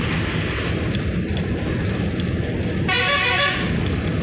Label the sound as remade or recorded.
recorded